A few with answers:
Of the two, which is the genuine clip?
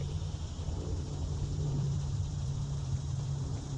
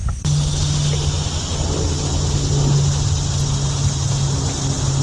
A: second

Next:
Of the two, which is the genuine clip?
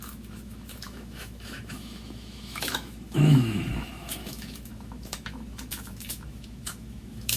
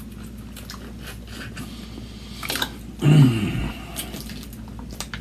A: second